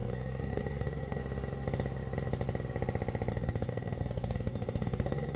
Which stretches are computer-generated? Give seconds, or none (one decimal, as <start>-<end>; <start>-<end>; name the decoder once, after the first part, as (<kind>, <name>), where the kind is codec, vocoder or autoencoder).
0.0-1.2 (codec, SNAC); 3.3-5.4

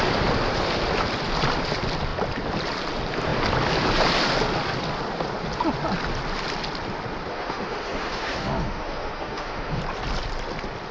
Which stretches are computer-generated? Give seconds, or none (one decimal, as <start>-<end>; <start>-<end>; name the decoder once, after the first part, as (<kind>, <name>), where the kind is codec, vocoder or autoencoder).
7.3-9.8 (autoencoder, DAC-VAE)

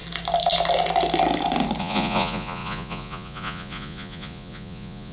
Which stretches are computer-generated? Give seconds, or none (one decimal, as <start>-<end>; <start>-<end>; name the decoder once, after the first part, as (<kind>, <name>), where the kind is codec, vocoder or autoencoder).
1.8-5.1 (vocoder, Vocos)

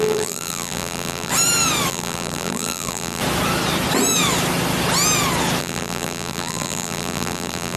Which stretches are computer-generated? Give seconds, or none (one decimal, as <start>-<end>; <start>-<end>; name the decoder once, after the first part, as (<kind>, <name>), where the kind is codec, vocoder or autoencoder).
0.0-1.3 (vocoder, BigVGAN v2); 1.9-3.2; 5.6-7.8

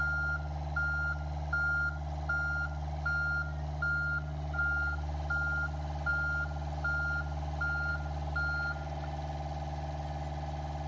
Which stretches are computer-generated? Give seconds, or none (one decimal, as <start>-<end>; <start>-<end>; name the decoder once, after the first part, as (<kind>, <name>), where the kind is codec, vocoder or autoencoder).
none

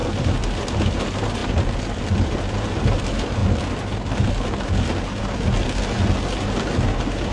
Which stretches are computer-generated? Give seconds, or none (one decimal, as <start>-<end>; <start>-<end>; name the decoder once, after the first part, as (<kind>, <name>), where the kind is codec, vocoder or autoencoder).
none

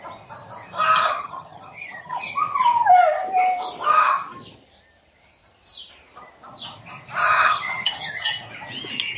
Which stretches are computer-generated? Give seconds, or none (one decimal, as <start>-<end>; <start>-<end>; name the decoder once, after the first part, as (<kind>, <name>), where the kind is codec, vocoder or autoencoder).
1.0-2.2 (vocoder, HiFi-GAN); 7.2-8.3

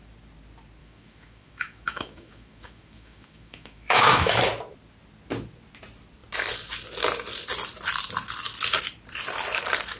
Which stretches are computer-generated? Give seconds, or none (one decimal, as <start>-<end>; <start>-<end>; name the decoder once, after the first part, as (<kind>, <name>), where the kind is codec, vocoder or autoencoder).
0.8-4.4 (autoencoder, DAC-VAE)